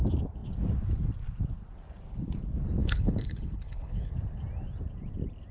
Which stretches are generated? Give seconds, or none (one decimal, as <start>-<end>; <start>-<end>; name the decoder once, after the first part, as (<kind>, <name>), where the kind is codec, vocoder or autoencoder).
2.8-4.1 (codec, HILCodec)